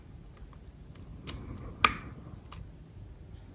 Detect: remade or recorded recorded